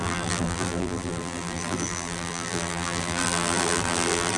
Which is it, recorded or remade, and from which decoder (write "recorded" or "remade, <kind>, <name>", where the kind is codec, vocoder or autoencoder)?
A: remade, vocoder, BigVGAN v2